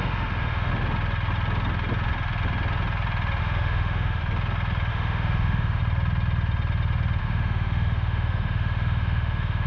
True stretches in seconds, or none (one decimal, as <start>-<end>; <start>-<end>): 0.7-3.4; 4.2-4.9; 5.8-7.2